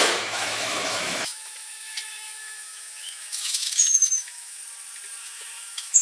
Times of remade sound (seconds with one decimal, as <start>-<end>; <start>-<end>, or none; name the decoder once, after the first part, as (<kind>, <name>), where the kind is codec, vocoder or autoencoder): 0.0-4.6 (autoencoder, DAC-VAE); 5.2-6.0